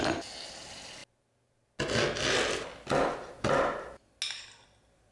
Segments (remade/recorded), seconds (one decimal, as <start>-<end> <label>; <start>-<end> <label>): 0.0-5.1 recorded